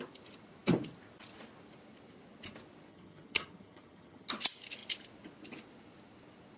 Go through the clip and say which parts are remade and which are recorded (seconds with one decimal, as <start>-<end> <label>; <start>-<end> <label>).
0.0-2.9 recorded; 2.9-4.3 remade; 4.3-6.6 recorded